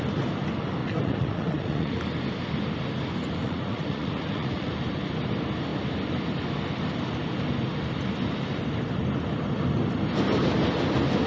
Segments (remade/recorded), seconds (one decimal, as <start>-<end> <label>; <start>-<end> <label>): 0.0-0.8 recorded; 0.8-2.0 remade; 2.0-3.4 recorded; 3.4-4.7 remade; 4.7-11.3 recorded